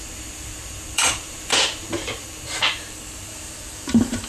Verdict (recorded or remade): remade